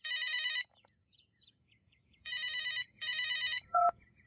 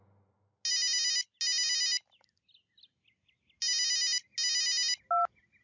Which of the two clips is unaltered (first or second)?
second